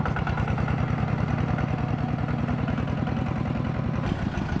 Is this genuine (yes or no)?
yes